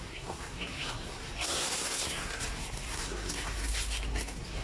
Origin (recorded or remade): remade